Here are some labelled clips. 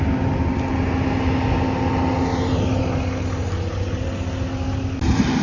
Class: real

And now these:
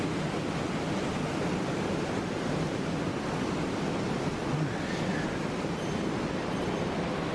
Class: real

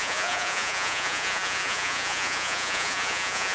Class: fake